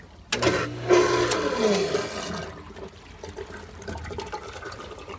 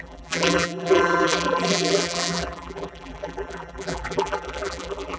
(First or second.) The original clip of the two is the first